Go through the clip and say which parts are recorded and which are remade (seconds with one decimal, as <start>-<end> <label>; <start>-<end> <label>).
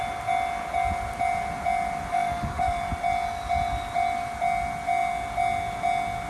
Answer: 0.0-2.1 recorded; 2.1-2.8 remade; 2.8-6.3 recorded